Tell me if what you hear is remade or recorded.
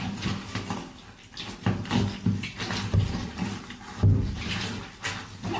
recorded